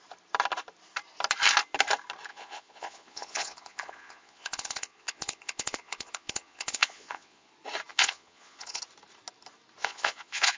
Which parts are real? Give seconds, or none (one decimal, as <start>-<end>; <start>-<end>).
0.0-2.3; 7.5-7.9; 8.8-9.8